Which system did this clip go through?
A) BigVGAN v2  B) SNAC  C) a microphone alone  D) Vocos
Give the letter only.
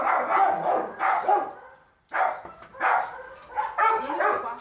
C